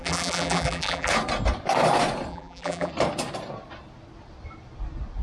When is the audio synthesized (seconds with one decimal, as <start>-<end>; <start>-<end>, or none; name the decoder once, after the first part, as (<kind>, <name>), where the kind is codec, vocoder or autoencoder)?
0.0-1.1 (vocoder, BigVGAN v2); 2.3-2.9